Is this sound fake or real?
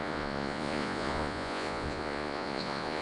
fake